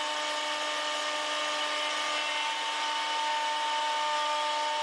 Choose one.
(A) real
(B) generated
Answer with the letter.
A